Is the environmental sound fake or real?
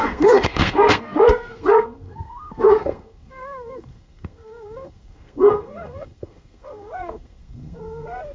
fake